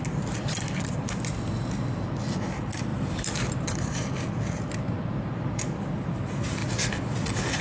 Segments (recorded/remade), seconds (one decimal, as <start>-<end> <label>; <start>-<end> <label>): 0.0-2.9 recorded; 2.9-5.6 remade; 5.6-7.6 recorded